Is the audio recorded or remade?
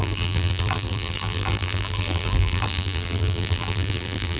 remade